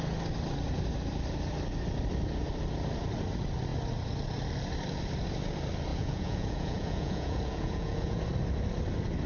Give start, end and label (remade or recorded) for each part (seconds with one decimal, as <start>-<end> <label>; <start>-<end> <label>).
0.0-5.9 recorded; 5.9-8.2 remade; 8.2-9.3 recorded